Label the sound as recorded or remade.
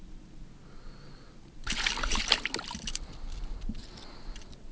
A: recorded